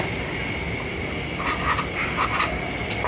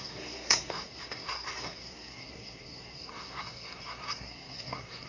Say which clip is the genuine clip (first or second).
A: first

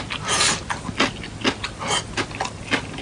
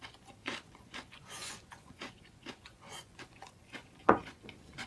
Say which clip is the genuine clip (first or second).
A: first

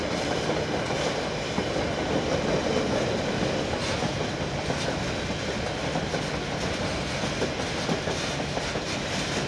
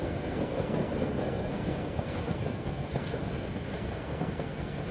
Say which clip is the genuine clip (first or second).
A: first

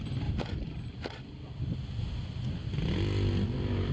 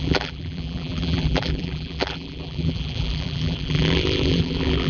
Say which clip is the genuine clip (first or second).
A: first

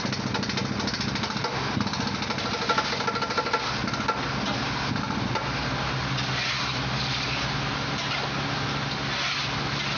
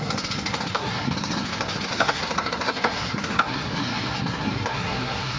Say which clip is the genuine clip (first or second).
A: first